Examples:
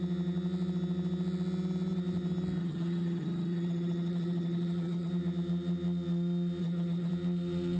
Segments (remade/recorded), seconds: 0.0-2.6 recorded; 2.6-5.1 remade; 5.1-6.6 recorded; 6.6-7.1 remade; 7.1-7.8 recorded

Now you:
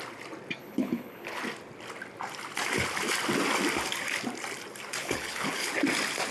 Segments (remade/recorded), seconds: 0.0-0.6 recorded; 0.6-1.4 remade; 1.4-5.0 recorded; 5.0-5.7 remade; 5.7-6.3 recorded

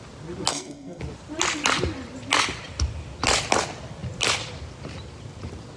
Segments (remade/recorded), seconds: 0.0-0.5 recorded; 0.5-1.0 remade; 1.0-5.8 recorded

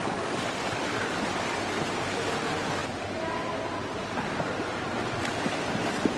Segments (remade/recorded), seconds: 0.0-6.2 recorded

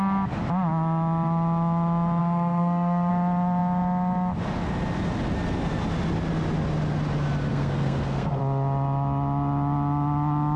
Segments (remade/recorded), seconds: 0.0-2.2 recorded; 2.2-3.1 remade; 3.1-7.5 recorded; 7.5-8.4 remade; 8.4-10.6 recorded

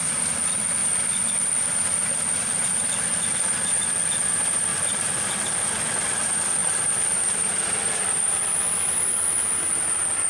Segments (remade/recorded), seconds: 0.0-4.7 recorded; 4.7-5.2 remade; 5.2-6.6 recorded; 6.6-8.5 remade; 8.5-10.3 recorded